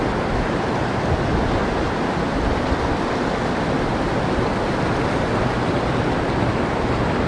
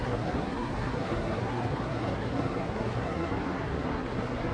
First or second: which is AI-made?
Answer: second